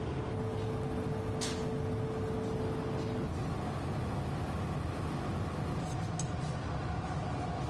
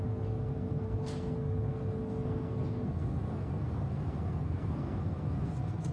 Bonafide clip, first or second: first